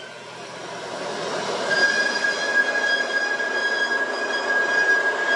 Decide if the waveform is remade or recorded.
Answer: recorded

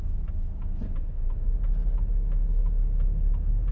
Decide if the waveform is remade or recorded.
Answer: recorded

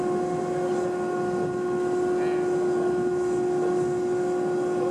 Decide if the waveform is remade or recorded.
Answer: recorded